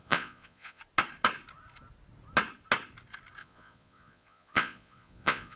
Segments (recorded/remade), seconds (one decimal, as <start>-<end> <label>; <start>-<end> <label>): 0.0-0.8 remade; 0.8-3.4 recorded; 3.4-5.6 remade